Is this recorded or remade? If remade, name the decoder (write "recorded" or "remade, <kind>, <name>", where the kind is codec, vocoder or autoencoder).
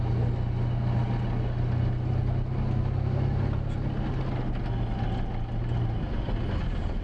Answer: recorded